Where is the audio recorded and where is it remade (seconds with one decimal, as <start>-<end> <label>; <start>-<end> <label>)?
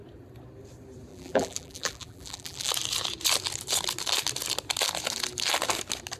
0.0-1.1 recorded; 1.1-2.7 remade; 2.7-6.2 recorded